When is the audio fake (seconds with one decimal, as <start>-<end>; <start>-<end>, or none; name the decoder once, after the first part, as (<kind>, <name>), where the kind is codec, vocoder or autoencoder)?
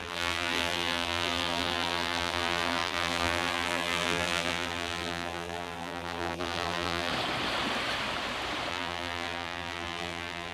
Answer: 0.0-7.1 (vocoder, BigVGAN v2); 8.7-10.5